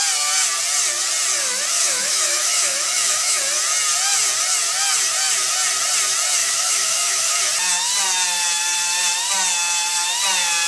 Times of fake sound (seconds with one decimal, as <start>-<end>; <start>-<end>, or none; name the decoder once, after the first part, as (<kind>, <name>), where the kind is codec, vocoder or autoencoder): 1.7-3.4 (autoencoder, DAC-VAE); 6.4-7.4